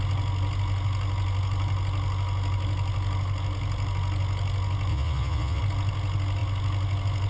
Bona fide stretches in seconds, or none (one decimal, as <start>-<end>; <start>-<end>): 0.0-4.9; 5.6-7.3